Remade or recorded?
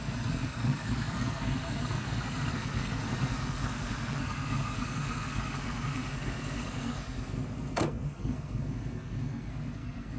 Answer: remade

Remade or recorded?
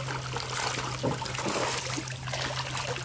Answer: recorded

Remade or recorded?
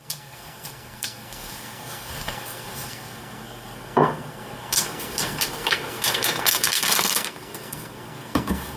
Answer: remade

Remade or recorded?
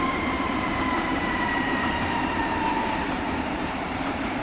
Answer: remade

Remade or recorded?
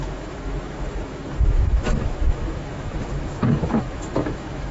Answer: remade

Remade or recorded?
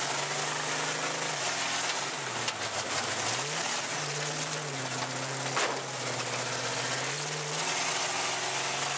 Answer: recorded